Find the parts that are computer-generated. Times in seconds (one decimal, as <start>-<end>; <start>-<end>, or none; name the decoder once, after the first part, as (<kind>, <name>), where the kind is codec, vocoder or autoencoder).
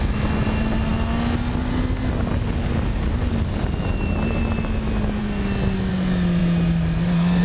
none